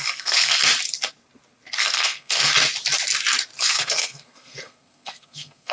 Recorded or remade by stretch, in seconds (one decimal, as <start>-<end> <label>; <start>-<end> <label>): 0.0-0.6 remade; 0.6-1.8 recorded; 1.8-2.5 remade; 2.5-3.6 recorded; 3.6-5.7 remade